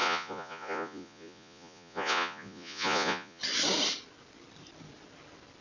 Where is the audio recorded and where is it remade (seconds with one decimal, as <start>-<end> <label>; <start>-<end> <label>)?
0.0-3.4 remade; 3.4-5.6 recorded

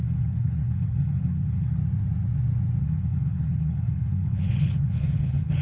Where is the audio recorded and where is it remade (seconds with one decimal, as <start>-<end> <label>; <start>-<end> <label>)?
0.0-1.8 remade; 1.8-2.8 recorded; 2.8-5.6 remade

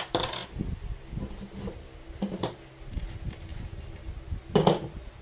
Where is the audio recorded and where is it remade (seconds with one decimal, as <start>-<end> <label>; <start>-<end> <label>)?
0.0-5.2 recorded

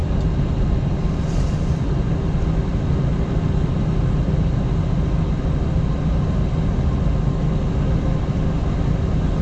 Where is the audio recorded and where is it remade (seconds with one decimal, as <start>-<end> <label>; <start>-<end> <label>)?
0.0-9.4 recorded

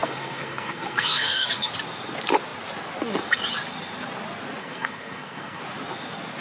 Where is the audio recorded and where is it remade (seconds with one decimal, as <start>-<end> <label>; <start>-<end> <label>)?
0.0-1.7 remade; 1.7-4.6 recorded; 4.6-5.6 remade; 5.6-6.4 recorded